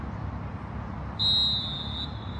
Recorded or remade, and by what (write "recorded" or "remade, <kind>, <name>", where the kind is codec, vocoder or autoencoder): recorded